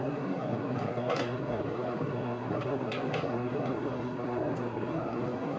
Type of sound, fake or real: fake